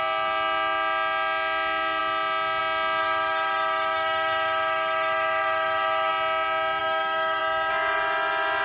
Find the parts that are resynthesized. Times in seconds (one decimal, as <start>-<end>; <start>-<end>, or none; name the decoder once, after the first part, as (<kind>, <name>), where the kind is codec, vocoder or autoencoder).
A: 3.0-6.1 (autoencoder, DAC-VAE); 6.8-7.4